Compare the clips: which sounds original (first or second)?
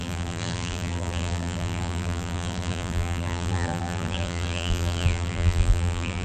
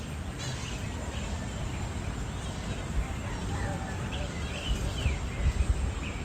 second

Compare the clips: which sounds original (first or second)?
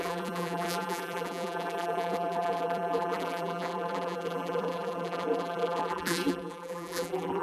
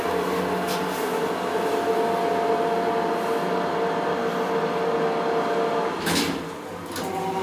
second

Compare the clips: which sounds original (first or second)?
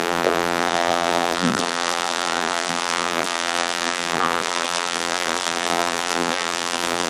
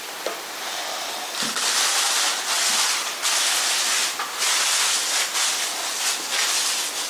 second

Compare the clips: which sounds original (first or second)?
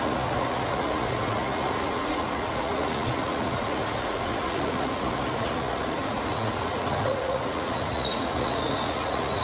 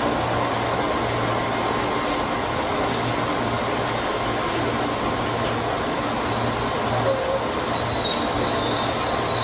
second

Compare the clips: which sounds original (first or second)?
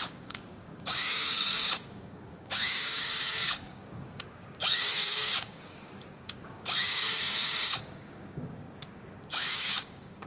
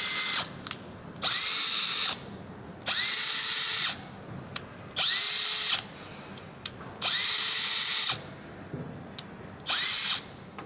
second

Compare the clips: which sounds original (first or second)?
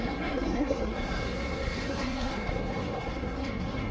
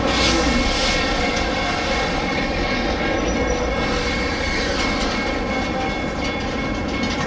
second